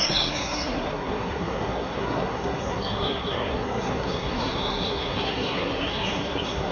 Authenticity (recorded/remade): remade